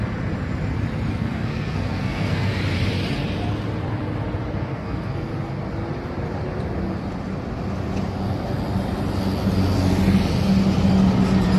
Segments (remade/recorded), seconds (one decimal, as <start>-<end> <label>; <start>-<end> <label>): 0.0-1.1 recorded; 1.1-2.6 remade; 2.6-4.7 recorded; 4.7-5.3 remade; 5.3-11.6 recorded